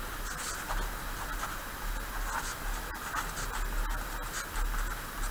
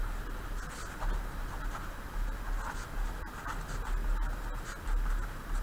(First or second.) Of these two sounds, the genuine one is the first